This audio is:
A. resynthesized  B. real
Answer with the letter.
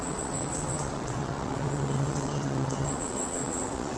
A